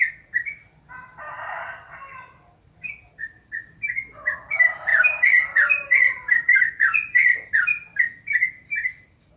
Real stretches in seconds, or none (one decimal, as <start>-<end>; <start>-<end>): 0.0-4.9; 7.5-9.4